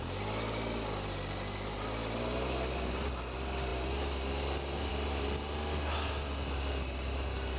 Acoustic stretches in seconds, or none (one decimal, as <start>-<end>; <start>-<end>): 0.0-7.6